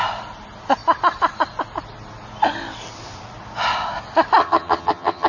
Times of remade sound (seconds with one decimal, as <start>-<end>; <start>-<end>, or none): 4.4-5.3